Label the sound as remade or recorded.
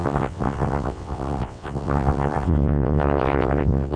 remade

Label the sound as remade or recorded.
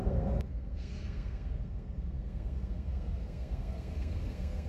remade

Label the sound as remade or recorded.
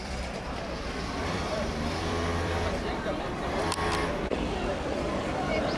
remade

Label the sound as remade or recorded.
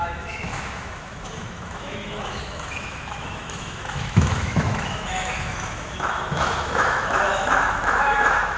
remade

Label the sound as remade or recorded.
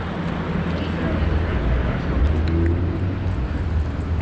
recorded